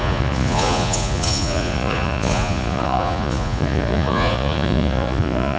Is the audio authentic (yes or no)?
no